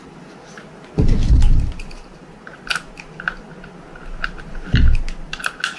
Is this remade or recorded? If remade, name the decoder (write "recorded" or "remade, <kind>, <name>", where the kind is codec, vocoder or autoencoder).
recorded